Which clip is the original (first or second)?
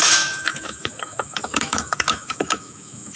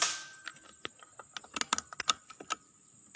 second